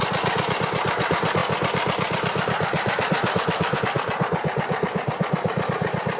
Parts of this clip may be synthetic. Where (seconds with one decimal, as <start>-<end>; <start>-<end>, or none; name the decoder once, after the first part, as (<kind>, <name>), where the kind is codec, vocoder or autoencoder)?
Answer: none